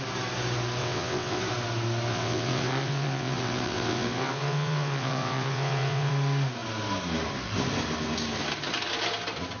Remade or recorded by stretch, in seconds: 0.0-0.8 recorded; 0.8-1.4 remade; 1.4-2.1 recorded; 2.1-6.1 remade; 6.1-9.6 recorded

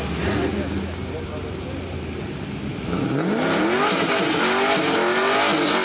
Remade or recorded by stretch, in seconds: 0.0-5.8 recorded

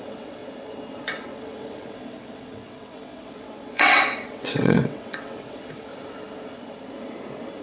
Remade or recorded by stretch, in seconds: 0.0-0.4 remade; 0.4-1.0 recorded; 1.0-5.9 remade; 5.9-7.6 recorded

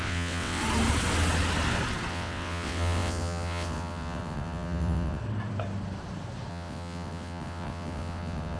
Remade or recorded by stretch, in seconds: 0.0-0.6 remade; 0.6-2.1 recorded; 2.1-5.2 remade; 5.2-6.5 recorded; 6.5-8.6 remade

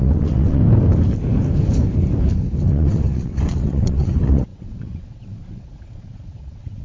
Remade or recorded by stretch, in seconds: 0.0-0.6 remade; 0.6-2.7 recorded; 2.7-6.8 remade

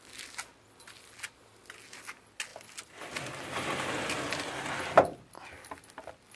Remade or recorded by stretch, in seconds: 0.0-6.4 recorded

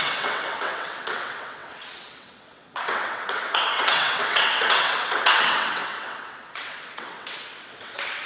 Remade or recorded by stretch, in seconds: 0.0-8.3 remade